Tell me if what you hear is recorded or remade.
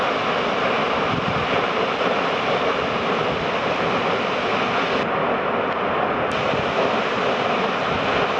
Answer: recorded